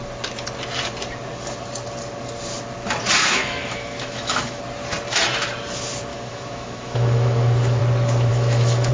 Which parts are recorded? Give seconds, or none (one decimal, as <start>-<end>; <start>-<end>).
0.0-3.2; 4.6-6.1; 7.8-8.3